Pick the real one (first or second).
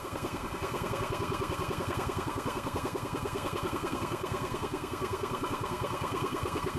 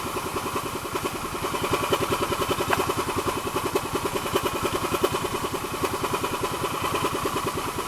second